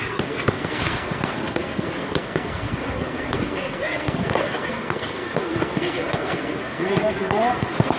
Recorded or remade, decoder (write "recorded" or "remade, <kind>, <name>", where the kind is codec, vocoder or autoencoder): remade, codec, SNAC